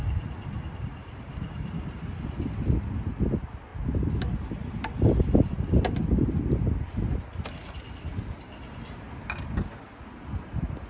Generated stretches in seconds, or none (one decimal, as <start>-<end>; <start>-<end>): none